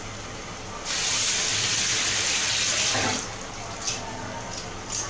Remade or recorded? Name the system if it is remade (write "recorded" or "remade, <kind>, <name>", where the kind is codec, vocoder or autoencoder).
recorded